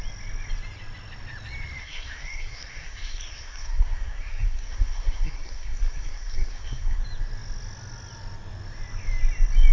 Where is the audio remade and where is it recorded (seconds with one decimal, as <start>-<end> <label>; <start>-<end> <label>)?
0.0-1.8 recorded; 1.8-7.0 remade; 7.0-9.7 recorded